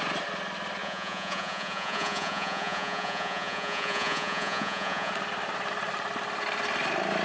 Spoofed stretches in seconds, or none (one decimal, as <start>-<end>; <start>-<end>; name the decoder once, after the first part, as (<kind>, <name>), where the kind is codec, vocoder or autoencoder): 0.8-5.1 (vocoder, Vocos)